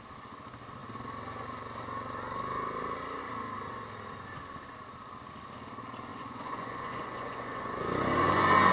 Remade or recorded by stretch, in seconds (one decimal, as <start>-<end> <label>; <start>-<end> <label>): 0.0-6.1 recorded; 6.1-8.7 remade